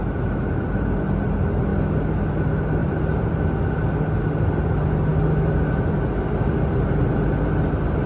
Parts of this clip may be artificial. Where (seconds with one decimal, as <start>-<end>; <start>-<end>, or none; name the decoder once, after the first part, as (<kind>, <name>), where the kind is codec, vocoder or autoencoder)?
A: 2.8-3.4 (vocoder, BigVGAN v2)